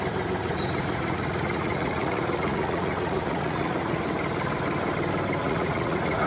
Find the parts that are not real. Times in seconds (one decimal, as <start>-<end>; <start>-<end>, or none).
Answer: 0.4-4.0; 5.4-6.3